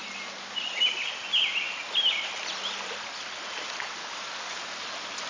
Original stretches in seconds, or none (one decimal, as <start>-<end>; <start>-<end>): 0.0-4.0; 4.6-5.3